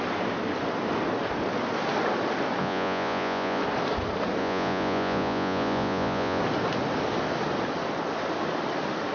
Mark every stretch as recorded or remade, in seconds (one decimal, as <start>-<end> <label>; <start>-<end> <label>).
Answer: 0.0-2.6 recorded; 2.6-3.6 remade; 3.6-4.4 recorded; 4.4-6.4 remade; 6.4-9.1 recorded